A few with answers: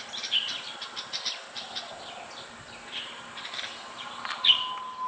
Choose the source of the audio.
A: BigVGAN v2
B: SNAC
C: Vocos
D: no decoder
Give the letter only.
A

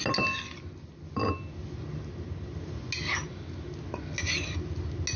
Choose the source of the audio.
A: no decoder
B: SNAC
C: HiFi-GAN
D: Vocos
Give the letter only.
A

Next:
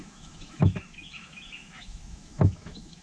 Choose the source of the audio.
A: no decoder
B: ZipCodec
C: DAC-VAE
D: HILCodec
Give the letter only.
C